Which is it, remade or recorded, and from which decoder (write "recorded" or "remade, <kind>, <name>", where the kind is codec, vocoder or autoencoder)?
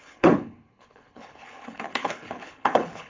remade, codec, HILCodec